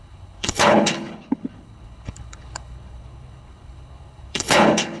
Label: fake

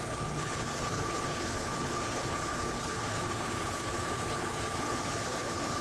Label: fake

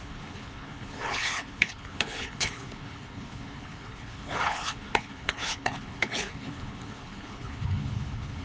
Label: fake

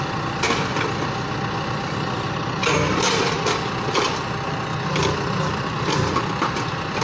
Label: real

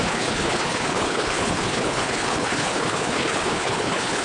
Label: fake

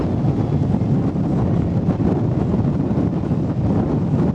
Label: real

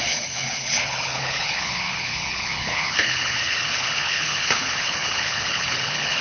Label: fake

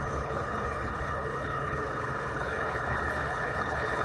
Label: fake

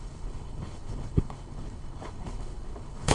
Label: fake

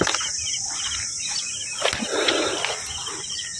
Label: real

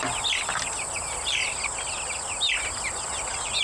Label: real